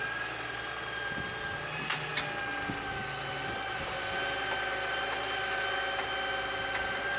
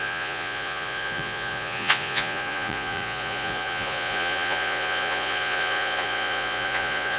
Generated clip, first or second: second